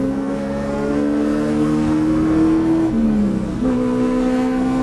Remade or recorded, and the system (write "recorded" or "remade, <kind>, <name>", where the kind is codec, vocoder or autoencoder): remade, codec, SNAC